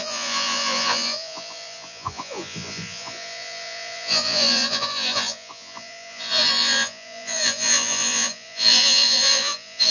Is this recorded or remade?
remade